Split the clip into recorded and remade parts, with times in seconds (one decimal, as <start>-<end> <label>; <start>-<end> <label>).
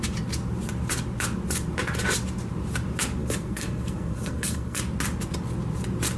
0.0-3.2 recorded; 3.2-4.8 remade; 4.8-6.2 recorded